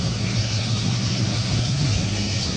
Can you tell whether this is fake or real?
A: fake